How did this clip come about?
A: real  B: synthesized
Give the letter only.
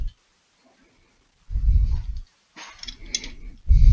A